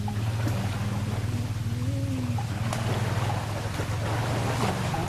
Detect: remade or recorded recorded